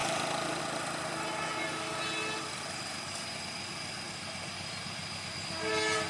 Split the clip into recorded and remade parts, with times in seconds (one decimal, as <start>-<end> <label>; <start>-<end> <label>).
0.0-6.1 recorded